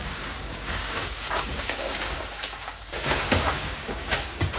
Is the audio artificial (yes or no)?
yes